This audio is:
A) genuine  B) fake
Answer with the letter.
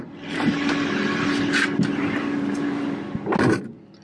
A